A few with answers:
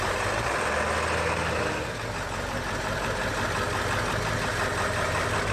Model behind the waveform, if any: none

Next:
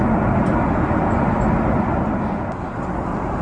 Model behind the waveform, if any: none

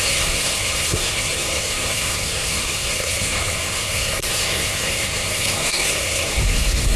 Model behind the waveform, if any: codec, SNAC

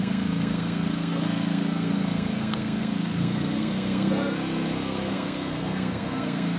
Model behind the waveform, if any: codec, SNAC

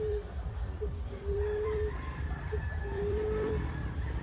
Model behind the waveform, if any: vocoder, BigVGAN v2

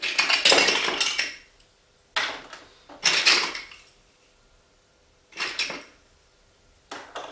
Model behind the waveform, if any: none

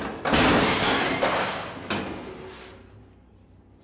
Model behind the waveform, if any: none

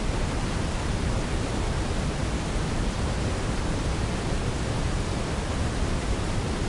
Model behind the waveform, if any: none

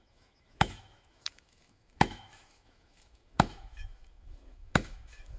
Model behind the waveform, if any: autoencoder, DAC-VAE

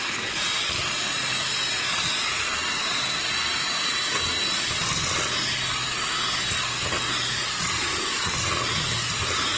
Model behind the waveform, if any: none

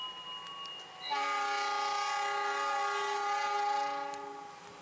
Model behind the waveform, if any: none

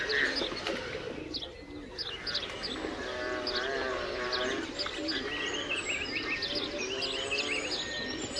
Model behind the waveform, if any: none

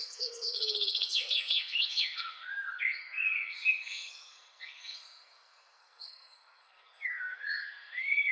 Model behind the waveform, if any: codec, SNAC